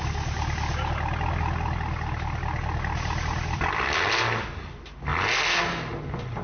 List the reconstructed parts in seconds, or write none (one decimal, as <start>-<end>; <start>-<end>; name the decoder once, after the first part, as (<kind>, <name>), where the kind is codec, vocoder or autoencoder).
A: none